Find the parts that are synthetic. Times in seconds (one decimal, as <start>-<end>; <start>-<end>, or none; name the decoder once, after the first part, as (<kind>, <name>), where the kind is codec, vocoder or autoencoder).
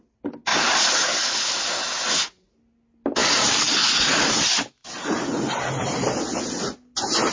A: none